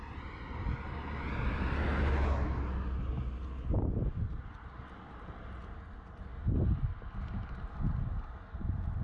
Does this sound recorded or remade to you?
recorded